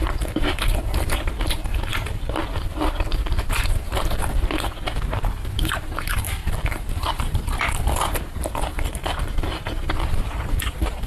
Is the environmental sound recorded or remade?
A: remade